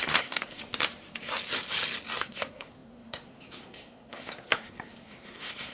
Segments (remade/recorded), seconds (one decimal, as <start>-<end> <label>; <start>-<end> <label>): 0.0-0.6 remade; 0.6-2.2 recorded; 2.2-5.7 remade